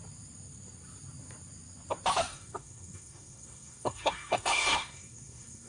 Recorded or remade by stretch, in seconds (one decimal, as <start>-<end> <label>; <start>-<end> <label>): 0.0-2.3 recorded; 2.3-5.7 remade

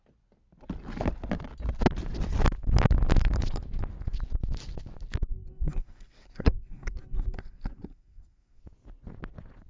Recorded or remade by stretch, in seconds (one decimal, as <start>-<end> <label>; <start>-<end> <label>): 0.0-5.3 recorded; 5.3-8.6 remade; 8.6-9.7 recorded

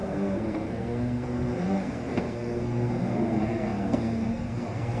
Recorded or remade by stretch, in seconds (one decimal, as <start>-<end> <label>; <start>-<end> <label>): 0.0-5.0 remade